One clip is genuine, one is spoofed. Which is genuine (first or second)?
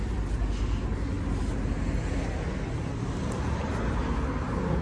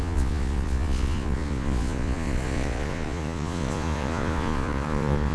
first